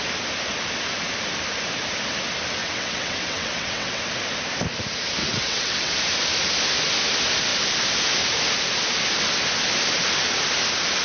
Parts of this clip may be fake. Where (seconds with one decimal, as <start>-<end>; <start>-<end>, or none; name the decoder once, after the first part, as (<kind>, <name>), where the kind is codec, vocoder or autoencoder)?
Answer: 2.6-4.0 (vocoder, WaveNeXt); 5.2-6.0